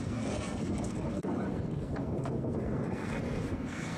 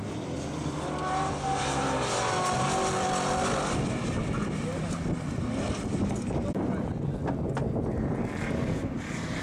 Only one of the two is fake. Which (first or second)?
first